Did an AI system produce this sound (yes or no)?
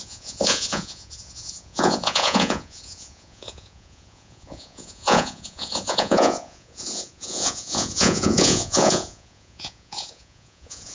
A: yes